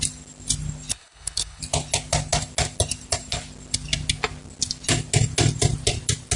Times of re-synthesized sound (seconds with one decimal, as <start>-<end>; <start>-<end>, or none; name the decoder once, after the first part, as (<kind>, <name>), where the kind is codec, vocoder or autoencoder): 0.9-1.6 (codec, HILCodec)